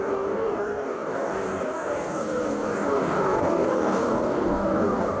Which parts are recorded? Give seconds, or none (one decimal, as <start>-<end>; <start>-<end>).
none